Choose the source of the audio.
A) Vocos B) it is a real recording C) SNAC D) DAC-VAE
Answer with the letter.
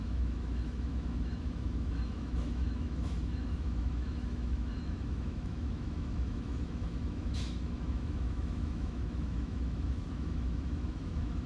D